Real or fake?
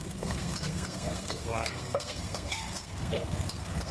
fake